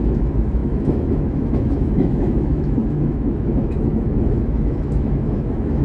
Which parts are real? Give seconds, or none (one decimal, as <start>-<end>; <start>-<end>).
none